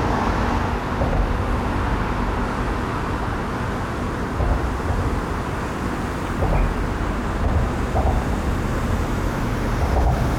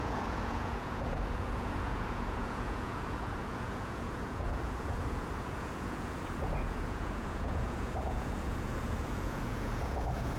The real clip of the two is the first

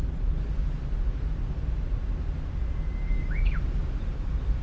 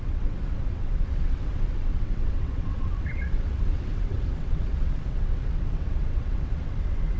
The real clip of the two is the first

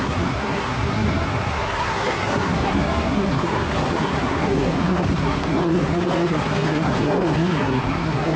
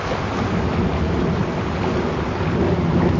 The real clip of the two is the second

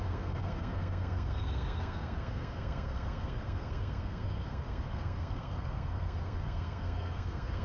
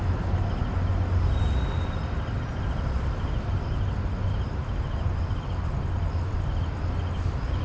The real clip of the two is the second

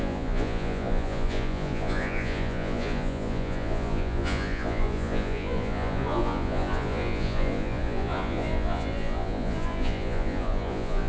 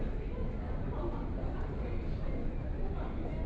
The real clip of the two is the second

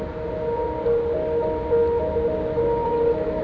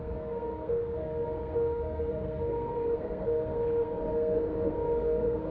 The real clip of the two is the first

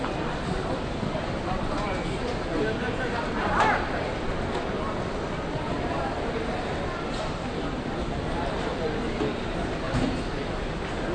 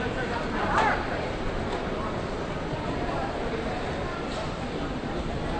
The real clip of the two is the first